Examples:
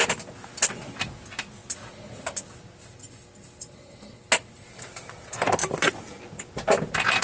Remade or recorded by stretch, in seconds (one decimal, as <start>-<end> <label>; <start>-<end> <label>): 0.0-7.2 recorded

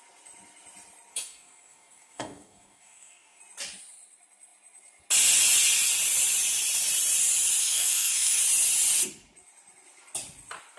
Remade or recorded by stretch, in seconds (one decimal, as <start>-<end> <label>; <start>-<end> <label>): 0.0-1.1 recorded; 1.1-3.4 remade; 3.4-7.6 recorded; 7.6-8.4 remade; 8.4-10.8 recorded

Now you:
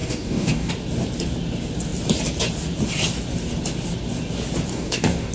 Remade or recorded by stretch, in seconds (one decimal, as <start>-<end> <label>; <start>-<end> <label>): 0.0-0.7 remade; 0.7-4.7 recorded; 4.7-5.3 remade

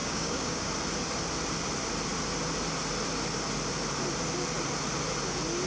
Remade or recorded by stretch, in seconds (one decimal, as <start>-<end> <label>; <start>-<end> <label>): 0.0-0.7 remade; 0.7-5.7 recorded

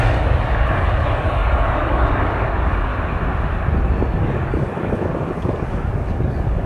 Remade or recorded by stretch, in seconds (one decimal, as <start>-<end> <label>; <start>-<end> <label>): 0.0-2.9 remade; 2.9-4.2 recorded; 4.2-6.7 remade